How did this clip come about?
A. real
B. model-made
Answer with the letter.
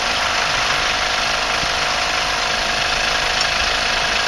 A